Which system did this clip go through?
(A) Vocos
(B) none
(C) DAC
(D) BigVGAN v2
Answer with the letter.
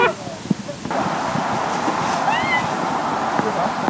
B